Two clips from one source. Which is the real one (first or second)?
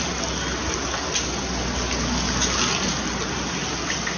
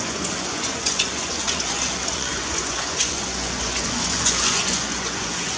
first